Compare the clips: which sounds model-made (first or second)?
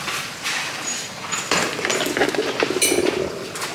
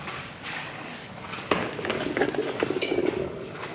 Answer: second